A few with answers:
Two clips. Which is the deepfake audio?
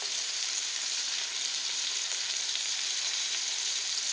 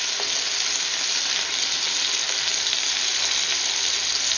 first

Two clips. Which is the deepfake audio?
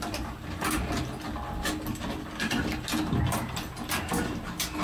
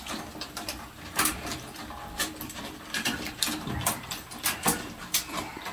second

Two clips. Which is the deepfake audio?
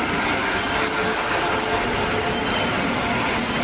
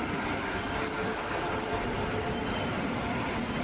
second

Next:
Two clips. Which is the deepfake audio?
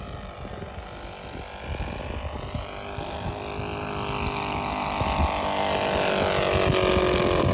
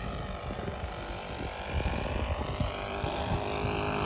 second